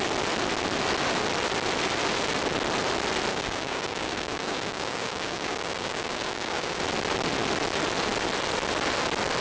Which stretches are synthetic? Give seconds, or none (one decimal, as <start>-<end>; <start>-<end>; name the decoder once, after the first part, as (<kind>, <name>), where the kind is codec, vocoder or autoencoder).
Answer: 3.3-6.8 (codec, DAC)